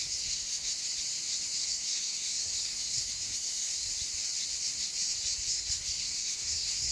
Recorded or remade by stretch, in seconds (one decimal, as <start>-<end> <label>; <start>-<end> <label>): 0.0-0.7 remade; 0.7-1.6 recorded; 1.6-3.9 remade; 3.9-5.5 recorded; 5.5-6.9 remade